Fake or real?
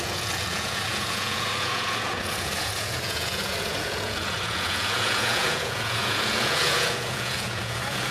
fake